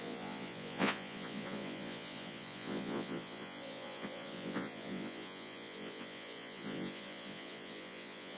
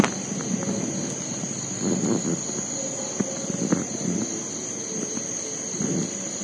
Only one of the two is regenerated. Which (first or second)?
first